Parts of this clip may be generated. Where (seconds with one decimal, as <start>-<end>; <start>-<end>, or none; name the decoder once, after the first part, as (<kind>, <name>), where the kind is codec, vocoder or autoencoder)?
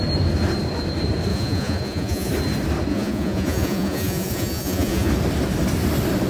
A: 1.3-2.3 (vocoder, Vocos); 2.9-5.1